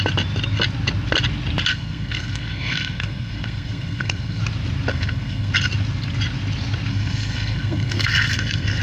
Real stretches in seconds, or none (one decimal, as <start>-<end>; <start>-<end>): 0.0-1.7; 4.4-4.9; 5.5-6.9